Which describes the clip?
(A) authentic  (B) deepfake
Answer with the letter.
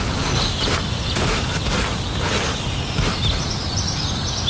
A